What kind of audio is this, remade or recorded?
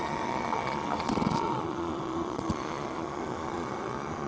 remade